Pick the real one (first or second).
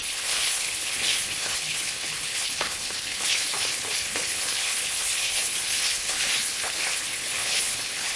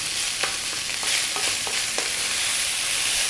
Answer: second